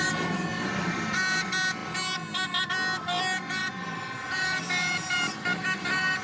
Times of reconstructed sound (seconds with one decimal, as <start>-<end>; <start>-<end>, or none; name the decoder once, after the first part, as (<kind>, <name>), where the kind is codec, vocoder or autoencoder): 0.5-1.4 (vocoder, BigVGAN v2); 3.6-5.3

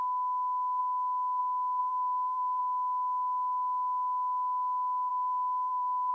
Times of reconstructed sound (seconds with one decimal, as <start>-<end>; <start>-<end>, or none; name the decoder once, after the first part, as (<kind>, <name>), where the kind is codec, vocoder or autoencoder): 1.8-2.6 (vocoder, BigVGAN v2); 5.1-6.1

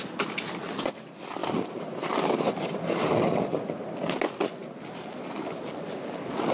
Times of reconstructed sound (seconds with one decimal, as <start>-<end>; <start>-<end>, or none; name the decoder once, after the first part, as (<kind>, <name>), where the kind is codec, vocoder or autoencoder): 1.4-3.1 (vocoder, BigVGAN v2)